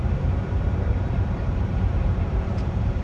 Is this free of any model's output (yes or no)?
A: no